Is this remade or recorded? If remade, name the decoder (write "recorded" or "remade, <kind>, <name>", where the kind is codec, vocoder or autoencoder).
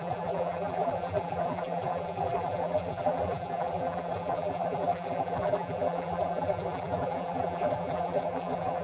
remade, vocoder, BigVGAN v2